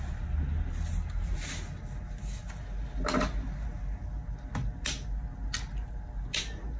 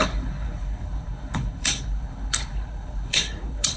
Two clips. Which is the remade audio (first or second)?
second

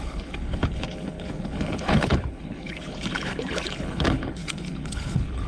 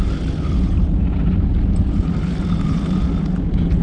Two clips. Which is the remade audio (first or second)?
first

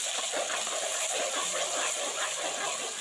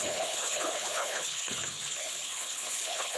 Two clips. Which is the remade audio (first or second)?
second